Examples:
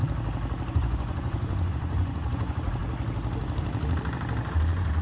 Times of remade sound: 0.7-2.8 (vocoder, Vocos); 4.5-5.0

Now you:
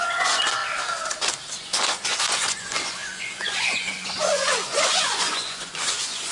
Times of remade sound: 0.0-0.6 (vocoder, Vocos); 1.6-6.3

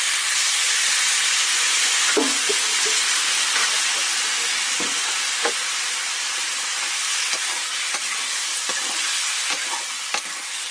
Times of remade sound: 0.9-2.4 (vocoder, Vocos)

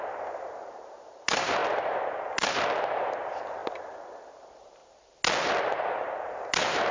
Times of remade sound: 0.0-3.6 (vocoder, BigVGAN v2); 4.3-4.8; 6.3-6.9

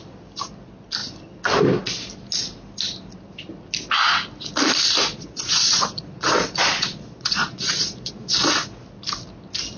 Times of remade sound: 5.1-8.5 (vocoder, Vocos)

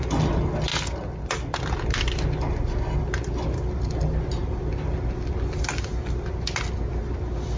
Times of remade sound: none

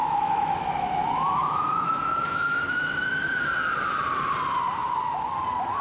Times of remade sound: 0.0-3.4 (autoencoder, DAC-VAE)

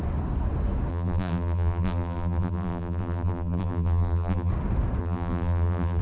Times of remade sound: 0.9-4.5 (vocoder, BigVGAN v2); 5.0-6.0